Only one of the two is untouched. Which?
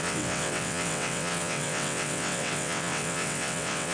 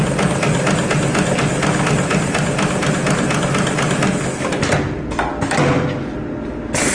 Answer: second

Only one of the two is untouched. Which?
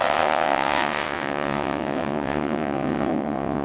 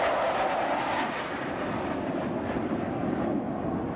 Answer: second